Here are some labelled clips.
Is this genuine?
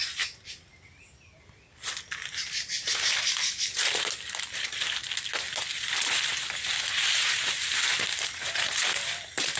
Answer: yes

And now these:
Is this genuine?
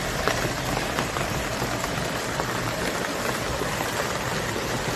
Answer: yes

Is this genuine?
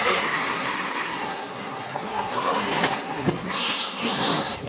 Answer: no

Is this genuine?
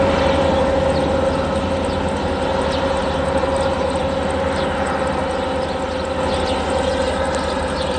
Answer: yes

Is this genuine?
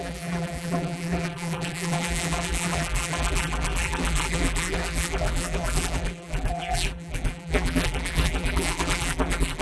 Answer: no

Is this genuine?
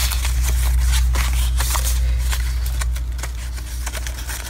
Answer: yes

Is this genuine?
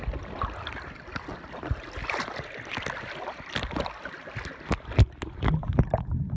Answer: yes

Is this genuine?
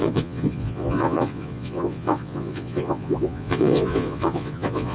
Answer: no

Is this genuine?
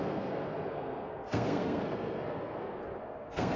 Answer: no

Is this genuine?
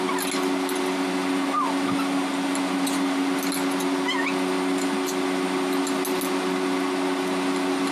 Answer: yes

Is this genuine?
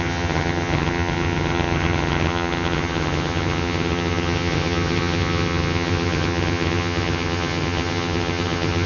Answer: no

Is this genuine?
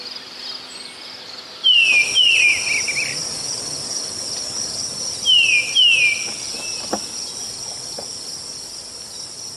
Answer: yes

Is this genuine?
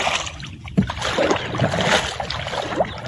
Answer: yes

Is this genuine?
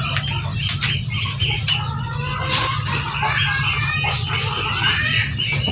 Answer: yes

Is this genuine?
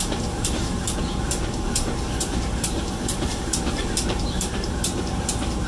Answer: no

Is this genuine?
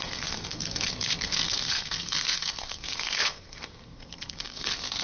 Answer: no